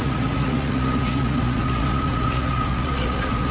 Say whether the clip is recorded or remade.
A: remade